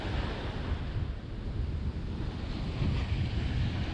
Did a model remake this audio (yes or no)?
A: no